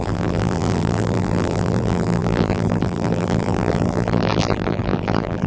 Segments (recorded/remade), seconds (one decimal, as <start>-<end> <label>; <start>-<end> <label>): 0.0-5.5 remade